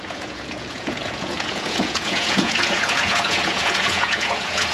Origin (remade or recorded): remade